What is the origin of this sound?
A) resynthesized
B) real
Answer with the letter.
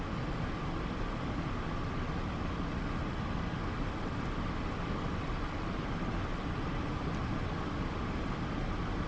B